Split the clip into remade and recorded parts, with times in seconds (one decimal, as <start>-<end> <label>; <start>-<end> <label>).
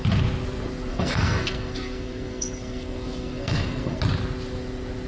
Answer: 0.0-0.9 recorded; 0.9-4.0 remade; 4.0-5.1 recorded